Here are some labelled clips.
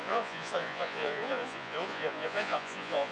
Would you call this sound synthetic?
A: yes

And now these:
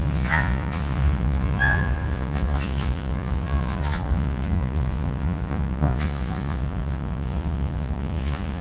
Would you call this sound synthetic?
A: yes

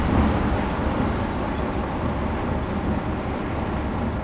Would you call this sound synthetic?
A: no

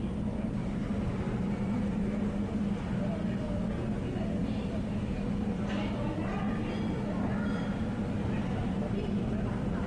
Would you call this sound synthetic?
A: no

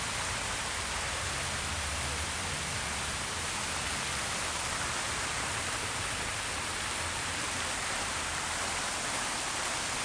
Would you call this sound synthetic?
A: no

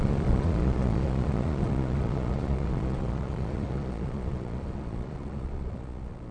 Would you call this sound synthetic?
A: yes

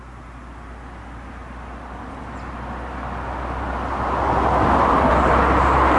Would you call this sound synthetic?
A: no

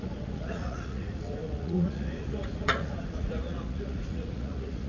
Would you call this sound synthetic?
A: yes